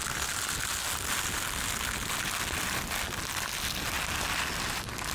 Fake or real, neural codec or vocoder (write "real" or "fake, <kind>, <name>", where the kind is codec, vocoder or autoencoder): real